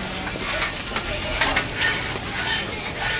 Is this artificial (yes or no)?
yes